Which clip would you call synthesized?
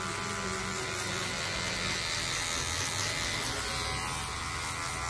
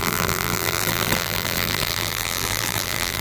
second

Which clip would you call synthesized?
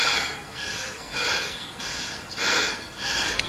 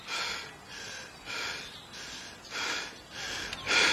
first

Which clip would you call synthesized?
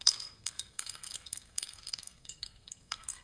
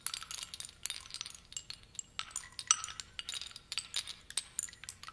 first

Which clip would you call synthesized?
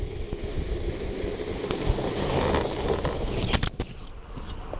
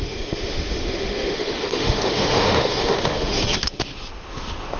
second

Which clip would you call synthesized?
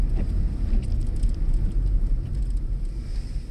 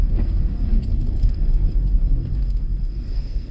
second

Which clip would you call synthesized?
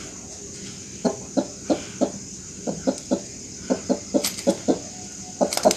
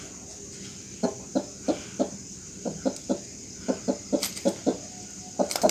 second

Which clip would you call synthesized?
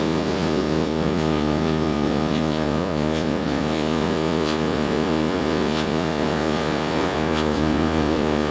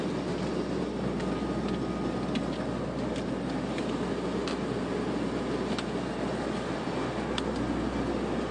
first